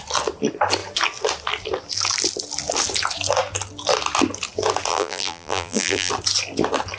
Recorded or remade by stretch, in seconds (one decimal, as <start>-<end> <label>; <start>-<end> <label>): 0.0-4.9 recorded; 4.9-6.1 remade; 6.1-7.0 recorded